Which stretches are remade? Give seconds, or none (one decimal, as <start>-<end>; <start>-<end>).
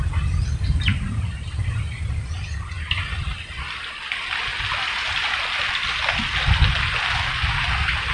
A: none